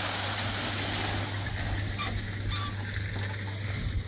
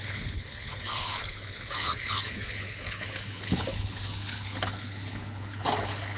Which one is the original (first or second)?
first